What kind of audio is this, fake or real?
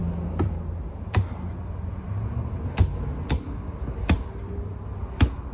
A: real